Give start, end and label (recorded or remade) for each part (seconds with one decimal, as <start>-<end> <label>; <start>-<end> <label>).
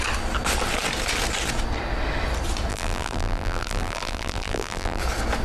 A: 0.0-2.7 recorded; 2.7-5.0 remade; 5.0-5.4 recorded